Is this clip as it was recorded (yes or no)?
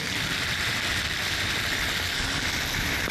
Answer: yes